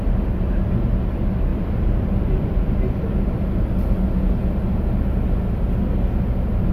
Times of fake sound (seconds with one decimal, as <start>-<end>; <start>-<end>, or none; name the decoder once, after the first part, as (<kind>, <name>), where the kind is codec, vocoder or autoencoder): 1.5-3.6 (vocoder, BigVGAN v2)